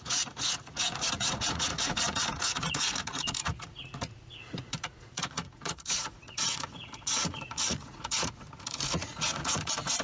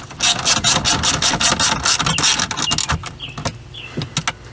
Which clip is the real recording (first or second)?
second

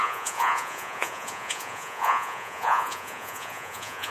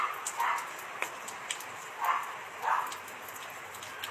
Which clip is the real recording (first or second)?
second